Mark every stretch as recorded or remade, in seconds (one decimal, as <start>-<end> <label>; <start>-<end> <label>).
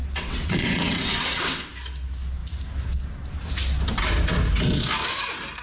0.0-1.6 remade; 1.6-5.6 recorded